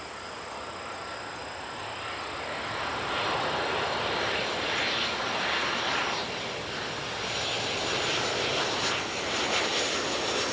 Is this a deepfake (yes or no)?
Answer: no